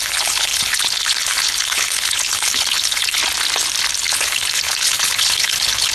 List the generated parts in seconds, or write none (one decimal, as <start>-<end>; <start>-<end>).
0.0-3.2; 4.1-5.9